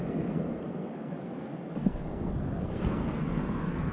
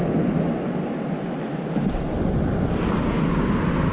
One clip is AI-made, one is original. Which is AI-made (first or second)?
first